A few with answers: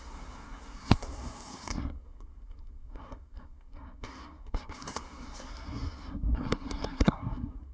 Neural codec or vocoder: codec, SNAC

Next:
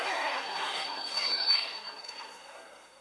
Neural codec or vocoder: codec, SNAC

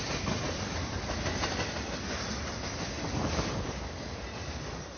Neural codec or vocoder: none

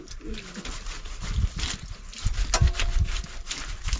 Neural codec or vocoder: none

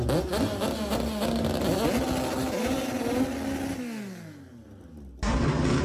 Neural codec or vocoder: none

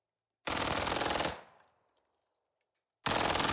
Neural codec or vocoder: none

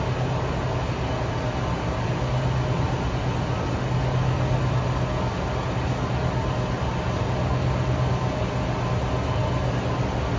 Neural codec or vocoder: none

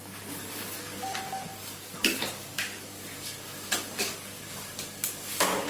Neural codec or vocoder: codec, DAC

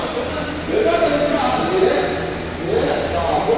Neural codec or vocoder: none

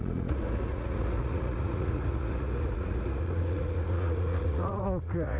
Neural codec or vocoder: vocoder, Vocos